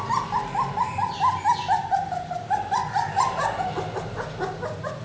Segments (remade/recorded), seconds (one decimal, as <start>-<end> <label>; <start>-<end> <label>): 0.0-5.0 recorded